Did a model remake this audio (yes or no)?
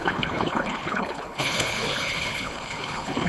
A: yes